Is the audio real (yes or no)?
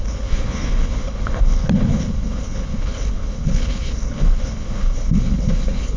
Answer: no